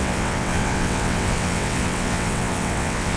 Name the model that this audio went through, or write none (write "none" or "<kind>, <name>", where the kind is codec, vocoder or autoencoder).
vocoder, WaveNeXt